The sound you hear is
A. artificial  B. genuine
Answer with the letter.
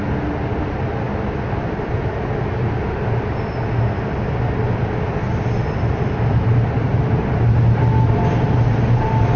B